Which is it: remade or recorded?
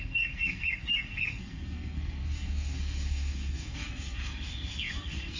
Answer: remade